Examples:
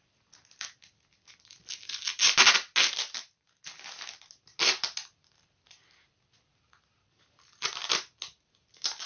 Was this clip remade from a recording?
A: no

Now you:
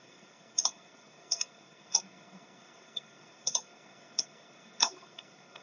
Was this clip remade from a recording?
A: yes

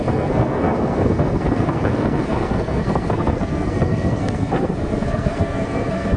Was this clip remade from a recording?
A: yes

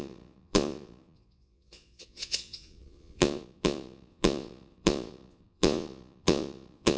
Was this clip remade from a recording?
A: yes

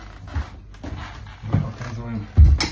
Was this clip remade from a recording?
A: no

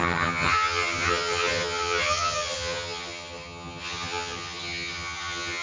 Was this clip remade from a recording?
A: yes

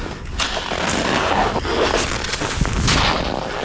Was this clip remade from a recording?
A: no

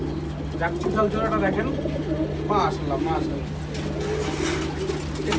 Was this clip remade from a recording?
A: no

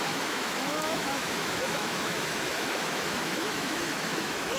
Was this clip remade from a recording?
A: yes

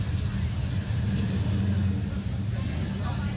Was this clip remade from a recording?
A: no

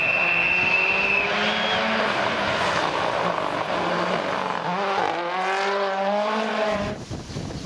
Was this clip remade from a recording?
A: no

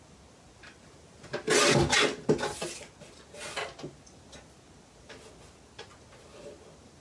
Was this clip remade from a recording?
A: no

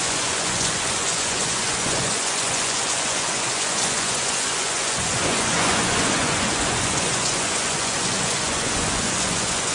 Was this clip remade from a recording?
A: yes